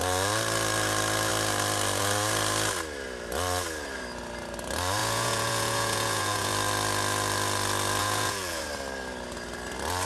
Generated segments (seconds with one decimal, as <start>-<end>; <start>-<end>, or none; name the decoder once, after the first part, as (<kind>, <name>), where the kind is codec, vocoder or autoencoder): 5.0-6.5 (vocoder, Vocos); 8.0-8.6